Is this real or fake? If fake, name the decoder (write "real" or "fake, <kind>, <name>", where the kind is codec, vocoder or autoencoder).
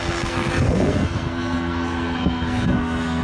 fake, codec, SNAC